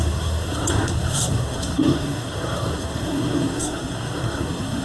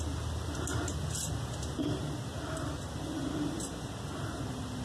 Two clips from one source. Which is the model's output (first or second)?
first